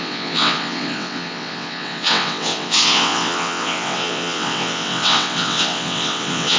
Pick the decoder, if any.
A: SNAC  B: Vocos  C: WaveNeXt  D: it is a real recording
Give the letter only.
C